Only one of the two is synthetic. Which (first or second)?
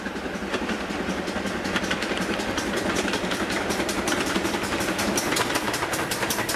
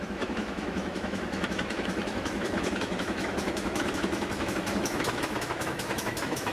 second